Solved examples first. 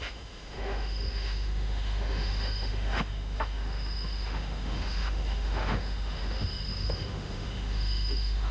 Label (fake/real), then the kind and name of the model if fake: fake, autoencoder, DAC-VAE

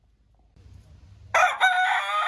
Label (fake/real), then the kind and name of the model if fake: real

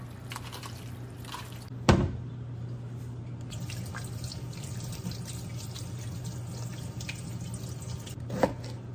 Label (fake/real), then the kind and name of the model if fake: real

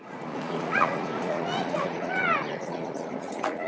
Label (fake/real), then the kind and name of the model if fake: fake, vocoder, Vocos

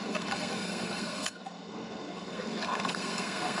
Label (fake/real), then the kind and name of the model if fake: fake, codec, SNAC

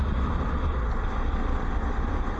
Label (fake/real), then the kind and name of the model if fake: real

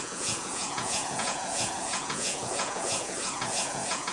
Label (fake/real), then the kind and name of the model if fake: fake, vocoder, Vocos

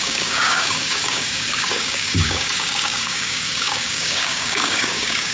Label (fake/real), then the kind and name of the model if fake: fake, codec, DAC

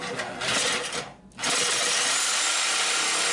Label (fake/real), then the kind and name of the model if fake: real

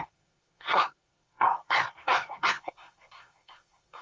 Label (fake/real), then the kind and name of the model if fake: fake, codec, SNAC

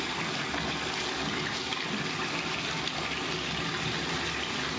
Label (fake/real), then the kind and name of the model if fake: real